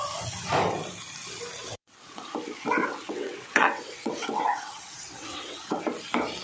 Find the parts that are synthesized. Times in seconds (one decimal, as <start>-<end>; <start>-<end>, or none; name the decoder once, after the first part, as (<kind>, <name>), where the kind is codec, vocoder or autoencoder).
1.6-2.3 (vocoder, WaveNeXt); 2.8-5.8